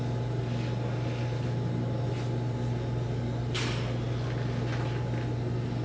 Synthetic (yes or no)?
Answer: no